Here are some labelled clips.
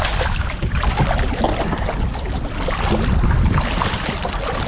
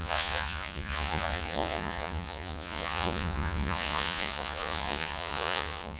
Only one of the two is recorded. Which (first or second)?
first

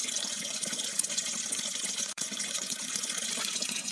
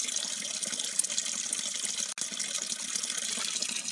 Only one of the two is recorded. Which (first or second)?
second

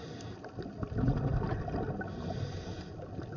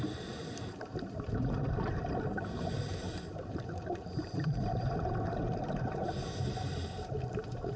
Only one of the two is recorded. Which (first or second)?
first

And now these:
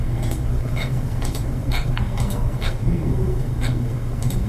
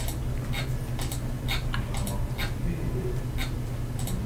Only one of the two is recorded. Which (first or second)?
second